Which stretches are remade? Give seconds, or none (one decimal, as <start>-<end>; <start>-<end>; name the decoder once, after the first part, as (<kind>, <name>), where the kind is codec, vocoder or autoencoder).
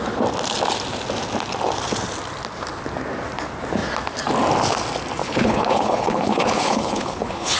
5.2-7.6 (codec, HILCodec)